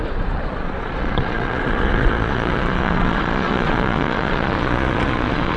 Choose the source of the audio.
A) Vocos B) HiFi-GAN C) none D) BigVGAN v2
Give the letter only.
A